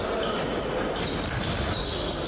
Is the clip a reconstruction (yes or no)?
no